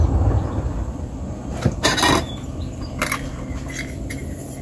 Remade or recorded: recorded